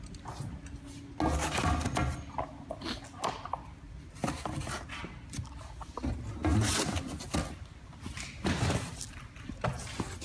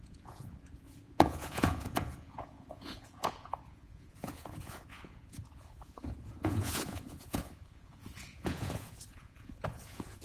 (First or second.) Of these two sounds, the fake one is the second